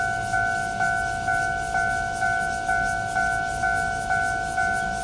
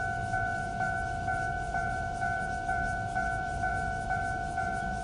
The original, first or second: first